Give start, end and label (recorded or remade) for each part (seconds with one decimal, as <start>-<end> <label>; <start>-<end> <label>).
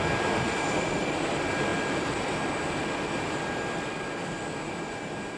0.0-5.4 recorded